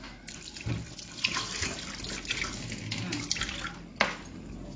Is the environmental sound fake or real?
real